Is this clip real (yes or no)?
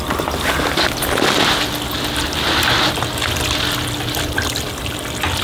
yes